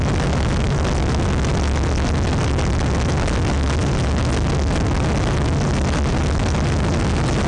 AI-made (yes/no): no